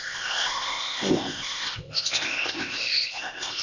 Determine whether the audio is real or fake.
fake